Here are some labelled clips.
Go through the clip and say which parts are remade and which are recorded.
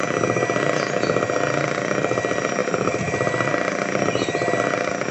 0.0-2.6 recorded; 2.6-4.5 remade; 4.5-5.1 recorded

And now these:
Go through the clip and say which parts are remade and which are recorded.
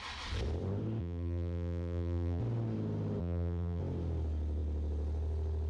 0.0-1.0 recorded; 1.0-2.4 remade; 2.4-3.2 recorded; 3.2-3.8 remade; 3.8-5.7 recorded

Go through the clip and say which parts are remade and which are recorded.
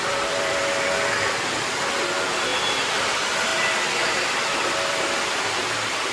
0.0-0.6 remade; 0.6-1.7 recorded; 1.7-2.5 remade; 2.5-3.1 recorded; 3.1-3.5 remade; 3.5-4.4 recorded; 4.4-6.1 remade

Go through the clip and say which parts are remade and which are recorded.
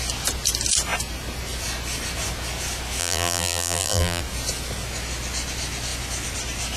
0.0-3.0 recorded; 3.0-4.2 remade; 4.2-6.8 recorded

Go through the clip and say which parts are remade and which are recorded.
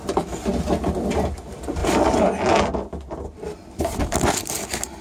0.0-1.8 remade; 1.8-3.8 recorded; 3.8-5.0 remade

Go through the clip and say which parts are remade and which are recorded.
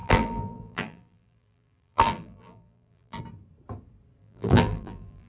0.0-3.2 remade; 3.2-4.2 recorded; 4.2-5.3 remade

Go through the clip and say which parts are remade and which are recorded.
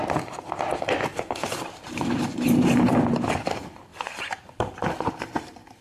0.0-1.1 recorded; 1.1-2.9 remade; 2.9-3.9 recorded; 3.9-5.8 remade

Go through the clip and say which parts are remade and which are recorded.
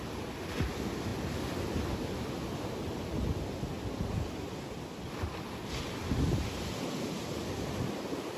0.0-8.4 recorded